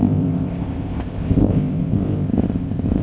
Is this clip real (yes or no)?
no